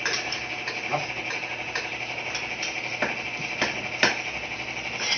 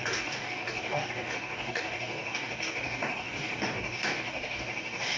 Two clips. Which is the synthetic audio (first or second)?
second